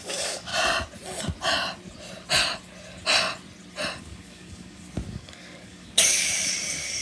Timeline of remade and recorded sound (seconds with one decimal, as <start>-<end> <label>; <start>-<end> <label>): 0.0-0.5 remade; 0.5-4.0 recorded; 4.0-7.0 remade